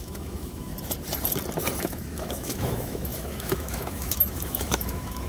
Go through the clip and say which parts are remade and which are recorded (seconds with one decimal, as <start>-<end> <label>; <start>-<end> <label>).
0.0-0.7 remade; 0.7-1.8 recorded; 1.8-5.3 remade